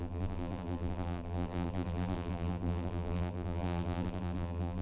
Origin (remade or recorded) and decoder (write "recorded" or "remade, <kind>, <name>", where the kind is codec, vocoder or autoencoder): remade, vocoder, BigVGAN v2